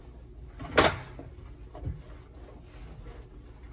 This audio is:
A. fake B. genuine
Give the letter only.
B